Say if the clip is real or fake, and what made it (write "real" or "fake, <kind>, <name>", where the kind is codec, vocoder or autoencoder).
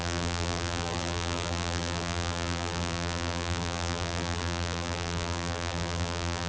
fake, vocoder, BigVGAN v2